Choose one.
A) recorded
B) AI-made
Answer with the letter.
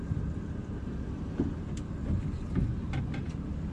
A